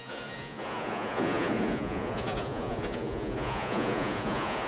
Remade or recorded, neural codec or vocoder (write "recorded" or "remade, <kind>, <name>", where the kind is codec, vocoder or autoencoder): remade, vocoder, Vocos